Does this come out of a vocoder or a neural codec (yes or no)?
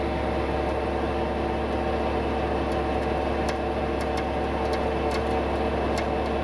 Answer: no